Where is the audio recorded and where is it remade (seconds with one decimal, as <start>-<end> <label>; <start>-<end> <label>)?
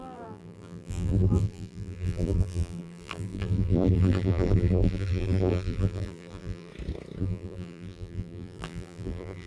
0.0-6.7 remade; 6.7-7.2 recorded; 7.2-9.5 remade